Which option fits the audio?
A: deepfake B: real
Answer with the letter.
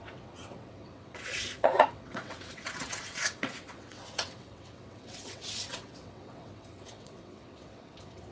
A